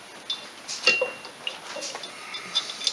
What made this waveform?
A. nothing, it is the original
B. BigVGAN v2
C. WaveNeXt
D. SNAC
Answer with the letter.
A